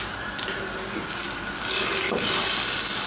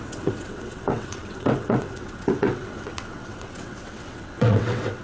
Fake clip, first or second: second